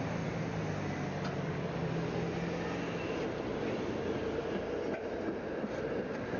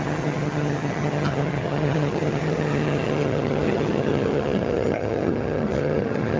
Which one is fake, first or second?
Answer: second